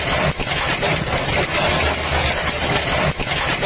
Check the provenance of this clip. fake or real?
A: real